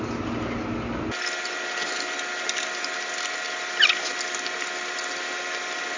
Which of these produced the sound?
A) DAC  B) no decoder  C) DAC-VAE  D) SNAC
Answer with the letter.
B